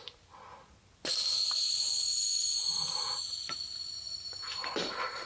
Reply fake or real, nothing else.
real